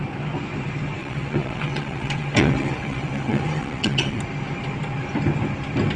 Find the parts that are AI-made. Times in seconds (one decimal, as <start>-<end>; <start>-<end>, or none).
1.0-4.2